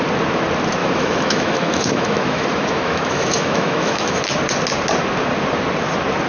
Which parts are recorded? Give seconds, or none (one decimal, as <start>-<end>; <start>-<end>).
0.0-0.8; 4.2-6.3